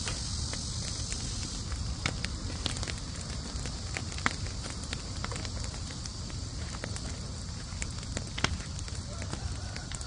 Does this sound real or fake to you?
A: real